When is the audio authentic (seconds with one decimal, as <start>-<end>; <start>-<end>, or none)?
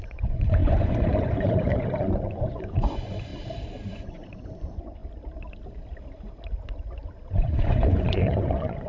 3.3-3.9; 5.0-7.3